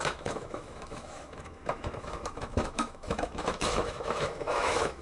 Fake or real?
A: fake